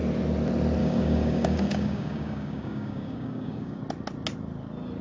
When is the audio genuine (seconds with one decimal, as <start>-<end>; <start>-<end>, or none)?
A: 0.0-0.8; 3.8-5.0